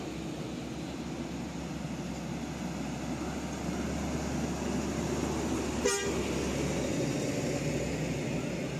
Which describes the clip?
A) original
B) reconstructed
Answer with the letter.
A